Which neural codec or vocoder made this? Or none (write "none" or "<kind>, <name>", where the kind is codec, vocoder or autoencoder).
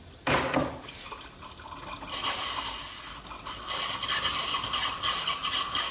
none